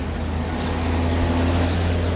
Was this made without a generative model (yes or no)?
yes